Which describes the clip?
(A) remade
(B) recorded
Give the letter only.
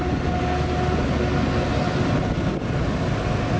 B